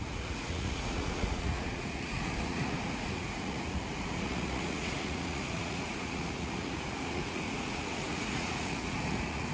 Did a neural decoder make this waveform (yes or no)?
yes